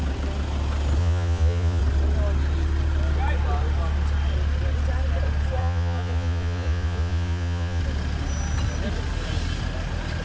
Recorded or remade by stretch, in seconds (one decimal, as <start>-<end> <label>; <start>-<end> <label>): 0.0-1.0 recorded; 1.0-1.8 remade; 1.8-5.6 recorded; 5.6-7.8 remade; 7.8-10.2 recorded